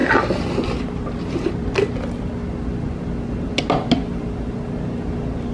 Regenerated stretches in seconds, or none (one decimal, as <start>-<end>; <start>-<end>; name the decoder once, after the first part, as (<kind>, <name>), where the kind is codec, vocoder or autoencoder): none